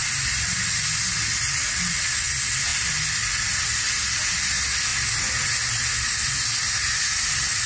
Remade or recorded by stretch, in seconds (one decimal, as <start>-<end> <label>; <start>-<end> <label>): 0.0-7.7 recorded